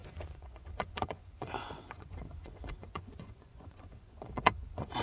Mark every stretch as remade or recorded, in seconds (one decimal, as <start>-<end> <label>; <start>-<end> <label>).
0.0-5.0 remade